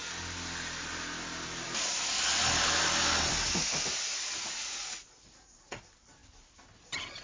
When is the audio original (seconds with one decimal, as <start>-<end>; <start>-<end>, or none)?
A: 0.0-4.1; 5.8-7.2